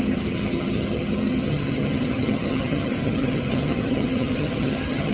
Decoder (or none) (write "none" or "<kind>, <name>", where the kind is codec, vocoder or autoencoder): vocoder, HiFi-GAN